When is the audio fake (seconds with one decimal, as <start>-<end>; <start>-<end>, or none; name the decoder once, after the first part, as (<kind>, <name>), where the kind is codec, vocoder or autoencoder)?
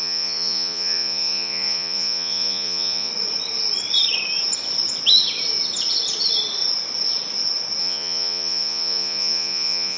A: 0.0-3.1 (vocoder, Vocos); 7.8-10.0